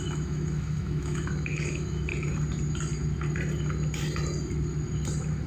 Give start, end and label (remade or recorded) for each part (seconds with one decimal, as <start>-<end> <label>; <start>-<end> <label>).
0.0-2.1 remade; 2.1-5.5 recorded